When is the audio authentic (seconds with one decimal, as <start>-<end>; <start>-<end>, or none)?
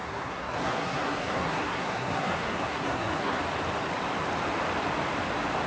3.4-5.7